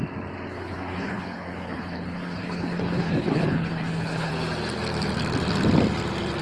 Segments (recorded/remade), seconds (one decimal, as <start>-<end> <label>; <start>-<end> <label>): 0.0-0.5 recorded; 0.5-4.3 remade; 4.3-6.4 recorded

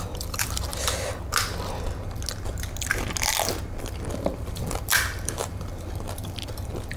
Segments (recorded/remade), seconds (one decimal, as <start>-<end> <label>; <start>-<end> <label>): 0.0-0.7 remade; 0.7-4.0 recorded; 4.0-7.0 remade

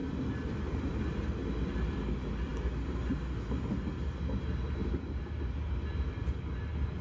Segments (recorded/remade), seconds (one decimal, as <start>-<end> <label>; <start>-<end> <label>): 0.0-7.0 recorded

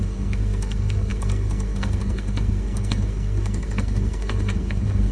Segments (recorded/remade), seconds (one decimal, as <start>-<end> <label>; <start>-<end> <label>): 0.0-5.1 remade

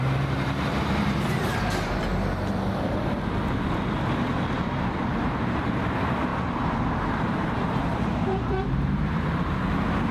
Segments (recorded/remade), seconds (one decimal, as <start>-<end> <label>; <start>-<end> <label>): 0.0-2.1 remade; 2.1-5.1 recorded; 5.1-6.3 remade; 6.3-7.2 recorded; 7.2-10.1 remade

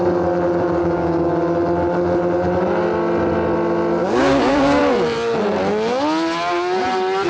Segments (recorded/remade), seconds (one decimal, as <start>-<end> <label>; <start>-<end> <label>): 0.0-0.8 recorded; 0.8-1.3 remade; 1.3-4.0 recorded; 4.0-4.8 remade; 4.8-7.3 recorded

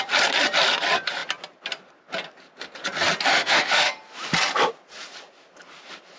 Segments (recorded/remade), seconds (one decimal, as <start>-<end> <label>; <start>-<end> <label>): 0.0-3.3 recorded; 3.3-3.9 remade; 3.9-6.2 recorded

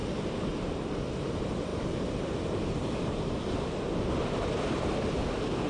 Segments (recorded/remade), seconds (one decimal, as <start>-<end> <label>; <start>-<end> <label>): 0.0-5.7 recorded